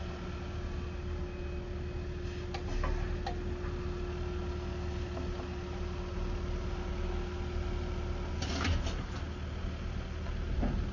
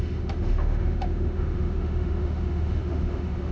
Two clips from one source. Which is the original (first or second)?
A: first